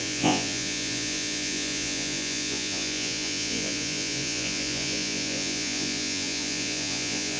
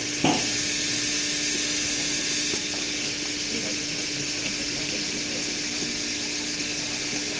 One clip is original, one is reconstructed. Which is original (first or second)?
second